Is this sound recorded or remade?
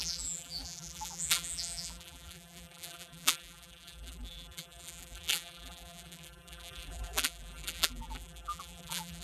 remade